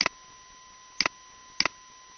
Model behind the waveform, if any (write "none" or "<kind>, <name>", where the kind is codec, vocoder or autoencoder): none